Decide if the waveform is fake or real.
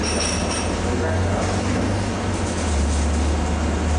real